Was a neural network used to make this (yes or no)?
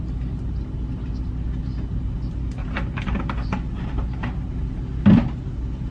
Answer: no